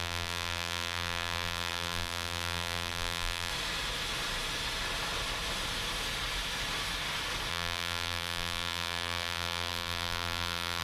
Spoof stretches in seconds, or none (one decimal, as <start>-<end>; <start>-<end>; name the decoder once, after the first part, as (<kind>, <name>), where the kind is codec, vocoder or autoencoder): 0.0-3.5 (vocoder, BigVGAN v2); 7.5-10.8

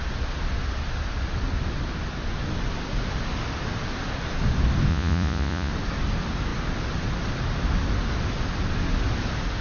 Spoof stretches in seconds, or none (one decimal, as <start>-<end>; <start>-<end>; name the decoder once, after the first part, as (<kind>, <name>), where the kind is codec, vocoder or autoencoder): 4.9-5.7 (vocoder, Vocos)

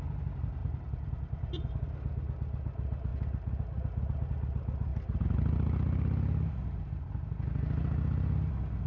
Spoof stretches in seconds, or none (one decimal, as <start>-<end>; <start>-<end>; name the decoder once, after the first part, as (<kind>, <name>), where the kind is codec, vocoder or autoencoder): 0.6-1.8 (vocoder, BigVGAN v2)

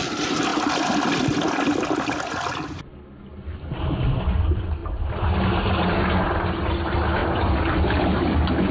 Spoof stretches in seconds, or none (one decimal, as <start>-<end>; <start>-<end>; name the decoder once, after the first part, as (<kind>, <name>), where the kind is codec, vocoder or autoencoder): none

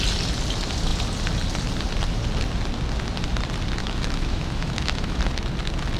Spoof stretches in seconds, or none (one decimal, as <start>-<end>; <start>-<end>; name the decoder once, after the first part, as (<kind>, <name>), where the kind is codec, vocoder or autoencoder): 3.8-5.2 (autoencoder, DAC-VAE)

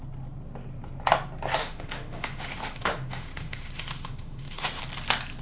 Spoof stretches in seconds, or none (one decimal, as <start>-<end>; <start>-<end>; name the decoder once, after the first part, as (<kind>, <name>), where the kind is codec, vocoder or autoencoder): 1.6-4.8 (autoencoder, DAC-VAE)